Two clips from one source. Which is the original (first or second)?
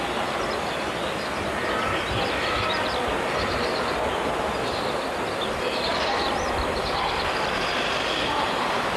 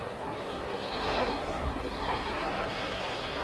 first